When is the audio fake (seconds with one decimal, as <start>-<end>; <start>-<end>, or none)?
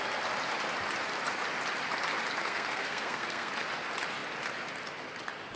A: 2.4-3.5